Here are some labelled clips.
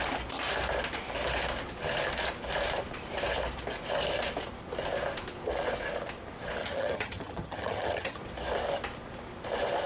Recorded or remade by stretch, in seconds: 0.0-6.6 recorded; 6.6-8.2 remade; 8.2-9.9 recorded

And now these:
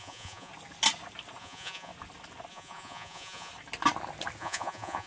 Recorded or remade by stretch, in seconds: 0.0-0.5 remade; 0.5-1.4 recorded; 1.4-1.9 remade; 1.9-2.5 recorded; 2.5-3.5 remade; 3.5-4.4 recorded; 4.4-5.1 remade

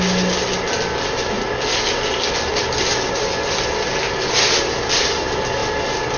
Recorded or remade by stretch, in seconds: 0.0-6.2 recorded

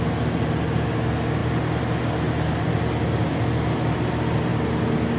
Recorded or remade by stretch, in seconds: 0.0-5.2 recorded

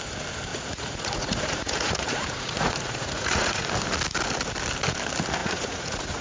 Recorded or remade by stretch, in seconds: 0.0-0.5 recorded; 0.5-3.7 remade; 3.7-5.4 recorded; 5.4-6.2 remade

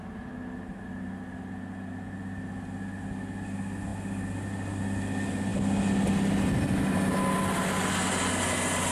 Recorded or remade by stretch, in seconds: 0.0-8.9 recorded

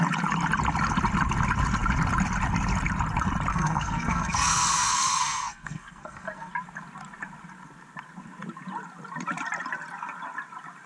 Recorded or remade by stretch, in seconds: 0.0-3.5 recorded; 3.5-6.5 remade; 6.5-10.9 recorded